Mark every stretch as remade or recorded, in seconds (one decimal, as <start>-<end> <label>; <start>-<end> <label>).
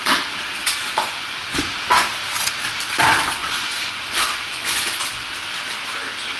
0.0-0.6 recorded; 0.6-1.6 remade; 1.6-3.4 recorded; 3.4-5.0 remade; 5.0-6.4 recorded